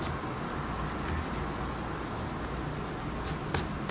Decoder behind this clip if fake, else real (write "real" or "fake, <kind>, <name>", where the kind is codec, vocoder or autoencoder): real